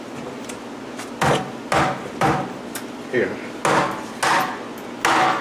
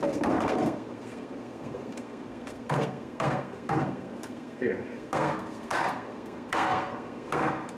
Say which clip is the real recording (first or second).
first